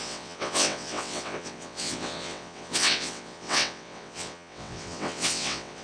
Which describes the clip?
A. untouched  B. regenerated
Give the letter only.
B